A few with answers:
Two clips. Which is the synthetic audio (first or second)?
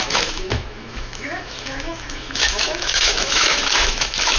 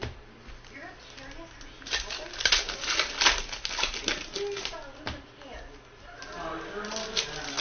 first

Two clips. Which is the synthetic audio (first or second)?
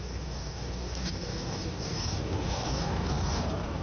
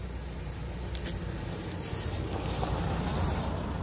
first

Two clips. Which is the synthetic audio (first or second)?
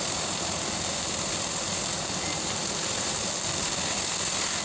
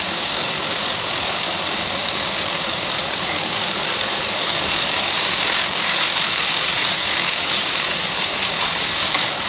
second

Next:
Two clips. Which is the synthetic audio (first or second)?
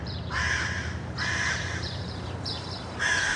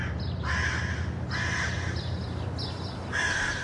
first